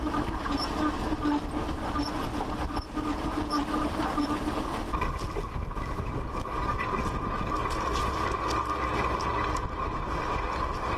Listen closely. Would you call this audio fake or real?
real